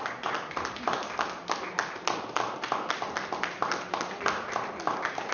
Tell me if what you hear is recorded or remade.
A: recorded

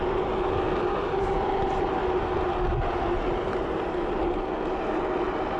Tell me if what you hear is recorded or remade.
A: recorded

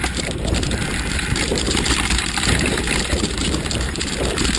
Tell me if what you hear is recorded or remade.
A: remade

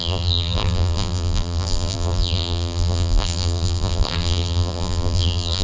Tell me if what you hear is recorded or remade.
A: remade